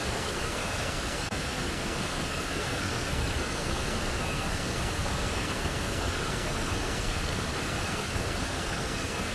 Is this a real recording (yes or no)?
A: no